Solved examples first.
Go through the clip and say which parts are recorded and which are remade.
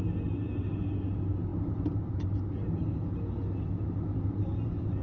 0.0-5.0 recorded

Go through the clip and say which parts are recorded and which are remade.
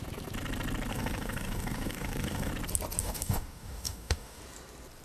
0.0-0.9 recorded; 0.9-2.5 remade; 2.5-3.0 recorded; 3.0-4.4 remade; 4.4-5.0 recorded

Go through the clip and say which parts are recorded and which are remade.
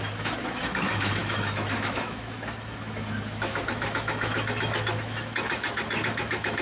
0.0-6.6 remade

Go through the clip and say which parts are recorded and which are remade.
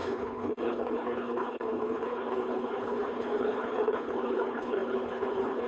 0.0-5.7 remade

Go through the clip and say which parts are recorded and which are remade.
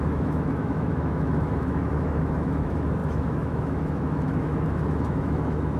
0.0-5.8 remade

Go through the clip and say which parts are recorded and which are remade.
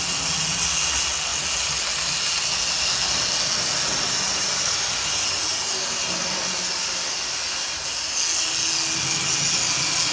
0.0-10.1 recorded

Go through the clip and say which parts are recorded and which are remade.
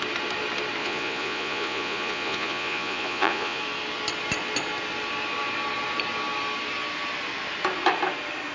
0.0-0.8 recorded; 0.8-3.6 remade; 3.6-8.5 recorded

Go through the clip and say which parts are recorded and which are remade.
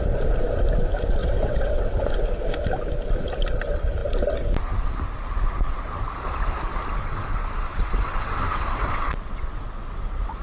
0.0-1.2 recorded; 1.2-2.1 remade; 2.1-7.0 recorded; 7.0-10.4 remade